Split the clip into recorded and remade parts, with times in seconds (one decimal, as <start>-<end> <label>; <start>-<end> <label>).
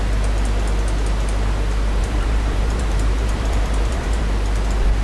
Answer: 0.0-2.0 recorded; 2.0-4.2 remade; 4.2-5.0 recorded